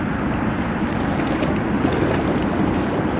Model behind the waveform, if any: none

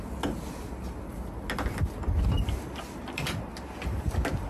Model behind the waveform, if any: none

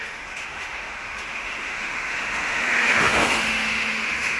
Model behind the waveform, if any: autoencoder, DAC-VAE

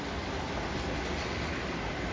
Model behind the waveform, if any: none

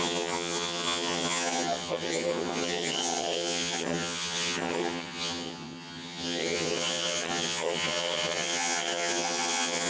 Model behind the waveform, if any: vocoder, HiFi-GAN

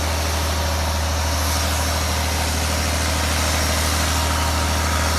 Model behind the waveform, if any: none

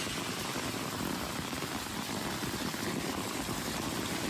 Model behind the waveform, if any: none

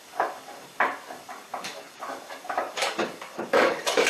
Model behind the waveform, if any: codec, DAC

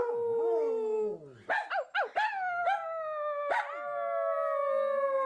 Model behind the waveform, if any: none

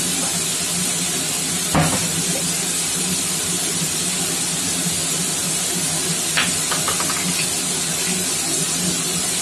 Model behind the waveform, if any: none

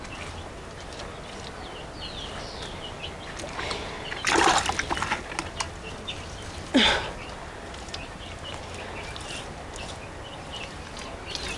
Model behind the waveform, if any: none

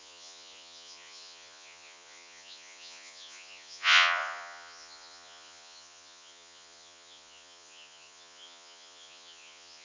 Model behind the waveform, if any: vocoder, Vocos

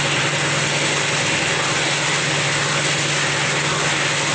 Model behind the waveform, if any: none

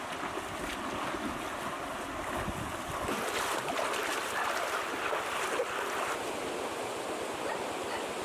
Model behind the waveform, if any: none